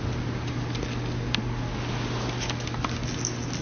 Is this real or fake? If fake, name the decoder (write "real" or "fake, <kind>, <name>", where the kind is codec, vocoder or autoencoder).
real